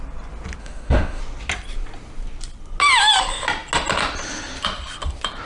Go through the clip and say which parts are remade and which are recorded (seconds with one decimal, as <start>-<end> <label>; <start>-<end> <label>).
0.0-0.6 recorded; 0.6-1.2 remade; 1.2-5.5 recorded